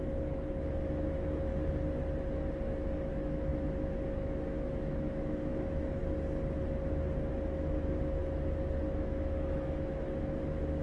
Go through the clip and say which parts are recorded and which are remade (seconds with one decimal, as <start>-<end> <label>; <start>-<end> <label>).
0.0-1.5 remade; 1.5-3.1 recorded; 3.1-6.0 remade; 6.0-7.3 recorded; 7.3-8.2 remade; 8.2-8.8 recorded; 8.8-10.8 remade